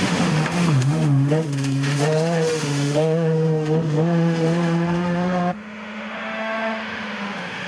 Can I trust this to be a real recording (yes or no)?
no